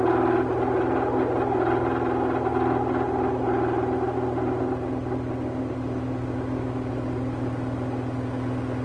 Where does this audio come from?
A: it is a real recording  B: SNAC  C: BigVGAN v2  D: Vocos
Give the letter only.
A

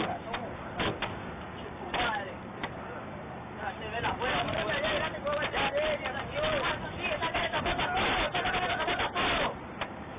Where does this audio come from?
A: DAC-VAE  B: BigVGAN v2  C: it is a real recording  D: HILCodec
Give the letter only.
C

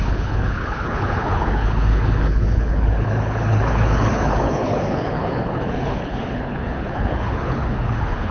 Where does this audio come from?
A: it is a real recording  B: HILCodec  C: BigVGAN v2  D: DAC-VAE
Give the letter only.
B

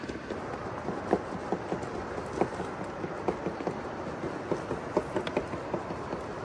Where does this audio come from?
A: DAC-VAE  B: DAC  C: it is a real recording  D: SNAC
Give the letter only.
C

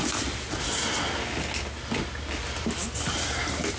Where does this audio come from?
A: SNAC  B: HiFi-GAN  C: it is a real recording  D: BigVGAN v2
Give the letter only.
C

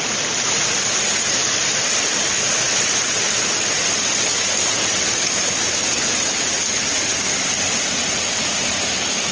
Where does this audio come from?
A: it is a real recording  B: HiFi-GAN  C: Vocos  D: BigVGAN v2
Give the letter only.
A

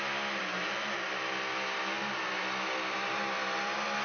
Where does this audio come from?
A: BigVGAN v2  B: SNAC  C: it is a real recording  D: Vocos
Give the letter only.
C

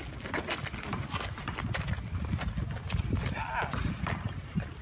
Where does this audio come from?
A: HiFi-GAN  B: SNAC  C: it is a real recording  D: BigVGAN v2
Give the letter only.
C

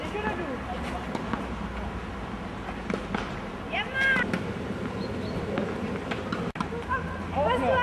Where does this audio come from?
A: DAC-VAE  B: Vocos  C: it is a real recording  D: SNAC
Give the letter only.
C